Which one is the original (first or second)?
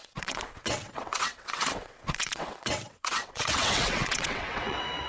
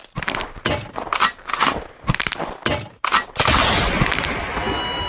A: second